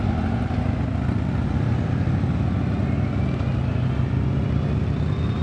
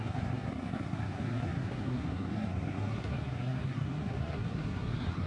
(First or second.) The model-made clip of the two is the second